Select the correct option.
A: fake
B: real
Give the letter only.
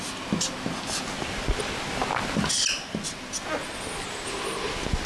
B